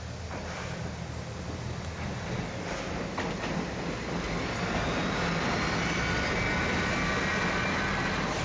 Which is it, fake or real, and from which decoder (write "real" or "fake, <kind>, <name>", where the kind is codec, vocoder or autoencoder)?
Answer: real